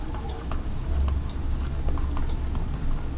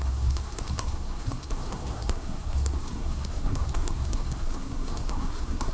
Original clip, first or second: first